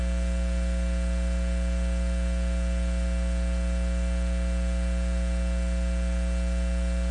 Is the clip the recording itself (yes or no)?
yes